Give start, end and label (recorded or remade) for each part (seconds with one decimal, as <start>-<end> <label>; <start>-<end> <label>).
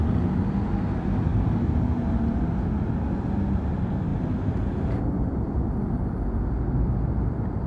0.0-7.7 recorded